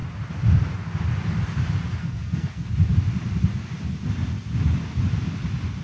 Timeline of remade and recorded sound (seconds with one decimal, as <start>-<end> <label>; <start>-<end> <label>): 0.0-2.0 recorded; 2.0-2.7 remade; 2.7-5.8 recorded